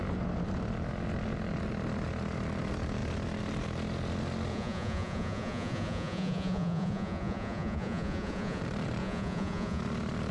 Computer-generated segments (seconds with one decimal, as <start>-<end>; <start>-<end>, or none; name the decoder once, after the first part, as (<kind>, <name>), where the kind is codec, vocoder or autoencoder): 4.5-8.6 (vocoder, Vocos); 9.0-9.8